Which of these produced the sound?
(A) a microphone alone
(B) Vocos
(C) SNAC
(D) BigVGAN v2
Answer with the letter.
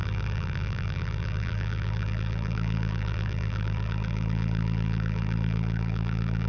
D